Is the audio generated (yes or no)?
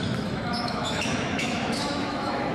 yes